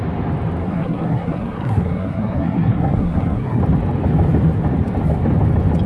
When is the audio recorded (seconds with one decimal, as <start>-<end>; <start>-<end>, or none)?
0.0-0.6; 3.6-5.9